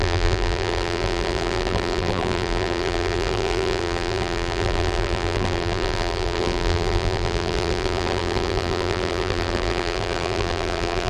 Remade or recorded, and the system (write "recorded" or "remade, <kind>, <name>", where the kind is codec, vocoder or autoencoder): remade, vocoder, BigVGAN v2